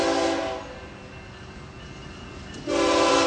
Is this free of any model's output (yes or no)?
yes